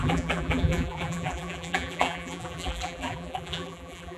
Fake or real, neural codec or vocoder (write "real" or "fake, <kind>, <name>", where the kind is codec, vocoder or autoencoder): fake, vocoder, BigVGAN v2